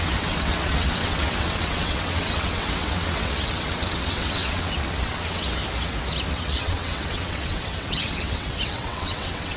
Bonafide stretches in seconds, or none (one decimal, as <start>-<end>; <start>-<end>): 5.6-6.3